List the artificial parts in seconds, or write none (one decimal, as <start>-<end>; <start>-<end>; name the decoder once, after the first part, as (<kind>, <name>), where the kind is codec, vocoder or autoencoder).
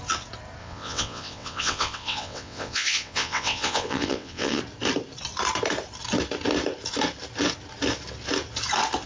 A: 0.6-4.6 (vocoder, WaveNeXt)